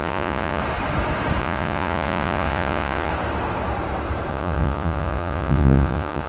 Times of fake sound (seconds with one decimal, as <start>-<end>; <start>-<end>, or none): 0.0-0.6; 1.4-3.1; 4.3-6.3